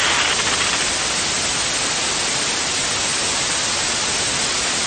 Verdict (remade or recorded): recorded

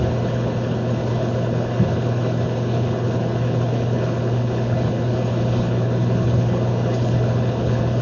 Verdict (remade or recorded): remade